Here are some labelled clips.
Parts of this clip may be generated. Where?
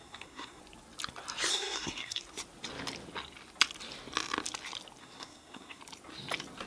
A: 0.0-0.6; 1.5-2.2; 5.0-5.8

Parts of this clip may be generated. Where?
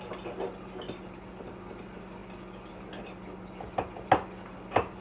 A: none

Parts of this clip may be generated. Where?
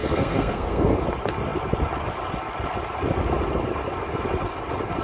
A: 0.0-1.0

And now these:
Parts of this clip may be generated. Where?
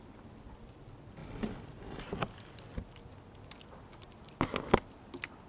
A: none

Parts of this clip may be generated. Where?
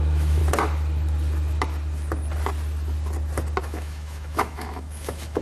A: 0.0-0.4; 3.6-5.4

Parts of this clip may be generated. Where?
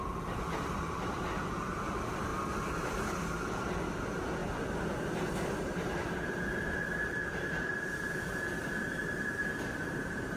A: 7.2-8.2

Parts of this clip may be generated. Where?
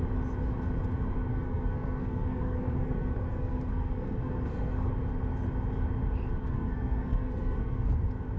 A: 1.3-4.9; 6.4-8.0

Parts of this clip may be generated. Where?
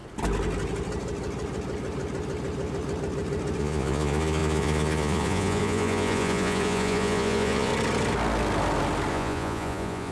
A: 3.6-7.7; 9.1-10.1